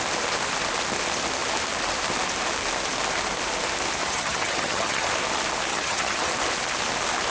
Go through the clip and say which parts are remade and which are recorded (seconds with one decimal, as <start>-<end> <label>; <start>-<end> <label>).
0.0-4.0 recorded; 4.0-5.1 remade; 5.1-5.7 recorded; 5.7-6.3 remade; 6.3-7.3 recorded